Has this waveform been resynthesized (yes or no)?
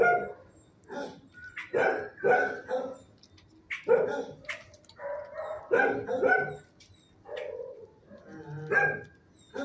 no